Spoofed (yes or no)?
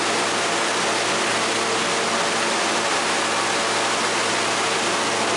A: no